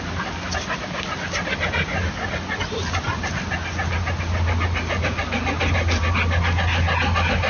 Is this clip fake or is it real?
real